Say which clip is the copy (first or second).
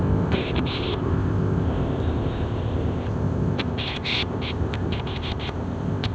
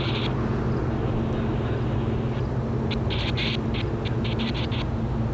first